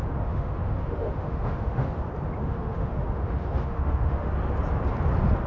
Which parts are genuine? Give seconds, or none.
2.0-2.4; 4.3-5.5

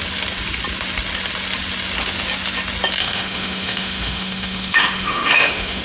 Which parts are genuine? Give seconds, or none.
0.0-3.0

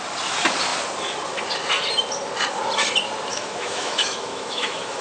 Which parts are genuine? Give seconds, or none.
0.0-3.3